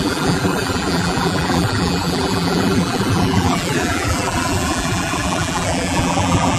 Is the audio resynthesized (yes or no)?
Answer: yes